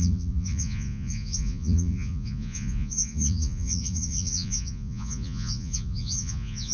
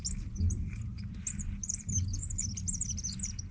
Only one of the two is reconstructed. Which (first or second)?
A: first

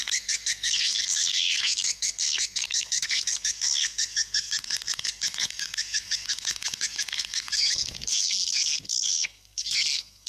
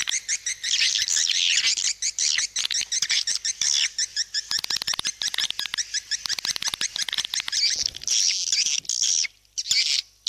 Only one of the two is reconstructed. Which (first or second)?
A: first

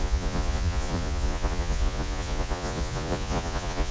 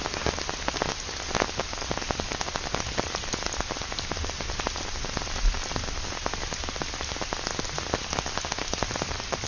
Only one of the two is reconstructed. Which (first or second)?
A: first